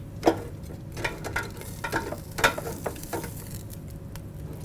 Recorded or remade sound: recorded